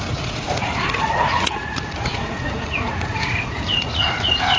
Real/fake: fake